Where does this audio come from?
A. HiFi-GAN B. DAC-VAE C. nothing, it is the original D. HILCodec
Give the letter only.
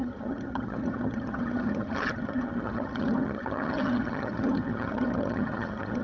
A